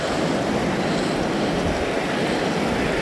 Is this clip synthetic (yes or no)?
no